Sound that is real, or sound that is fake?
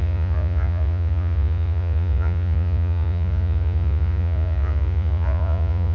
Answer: fake